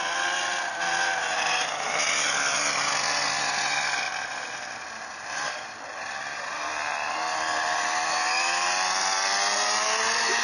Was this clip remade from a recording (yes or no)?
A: no